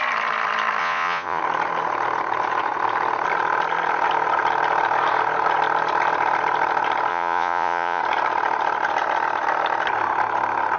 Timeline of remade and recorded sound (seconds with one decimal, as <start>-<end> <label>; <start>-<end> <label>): 0.0-0.8 recorded; 0.8-1.4 remade; 1.4-7.1 recorded; 7.1-8.0 remade; 8.0-10.8 recorded